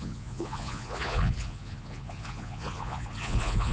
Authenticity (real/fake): fake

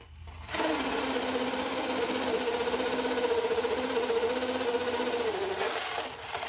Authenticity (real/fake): real